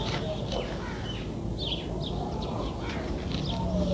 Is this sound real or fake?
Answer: real